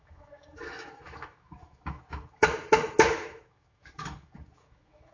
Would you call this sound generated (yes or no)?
yes